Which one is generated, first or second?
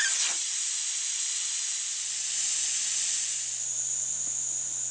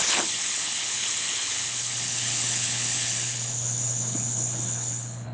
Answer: second